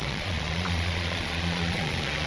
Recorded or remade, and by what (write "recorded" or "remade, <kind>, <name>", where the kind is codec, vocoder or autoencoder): remade, vocoder, Vocos